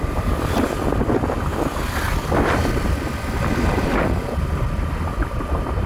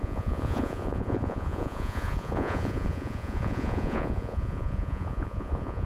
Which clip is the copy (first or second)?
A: second